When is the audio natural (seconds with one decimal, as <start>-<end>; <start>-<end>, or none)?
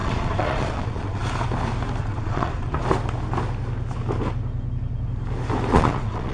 1.2-2.0; 2.8-5.7